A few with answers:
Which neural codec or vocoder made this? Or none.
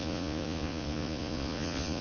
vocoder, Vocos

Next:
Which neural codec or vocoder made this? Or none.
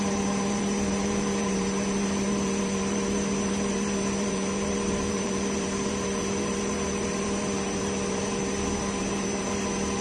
vocoder, BigVGAN v2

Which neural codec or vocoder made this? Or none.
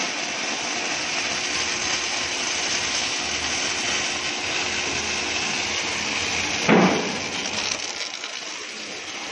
none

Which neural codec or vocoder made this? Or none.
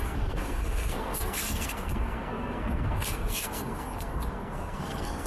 codec, SNAC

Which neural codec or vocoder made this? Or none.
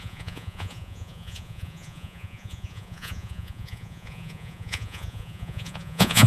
vocoder, Vocos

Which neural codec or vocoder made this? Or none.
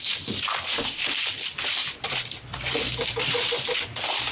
vocoder, BigVGAN v2